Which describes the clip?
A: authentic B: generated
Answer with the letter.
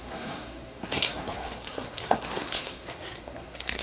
B